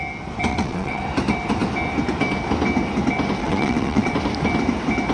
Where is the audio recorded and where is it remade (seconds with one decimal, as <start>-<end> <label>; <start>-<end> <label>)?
0.0-0.5 recorded; 0.5-1.0 remade; 1.0-3.4 recorded; 3.4-4.1 remade; 4.1-5.1 recorded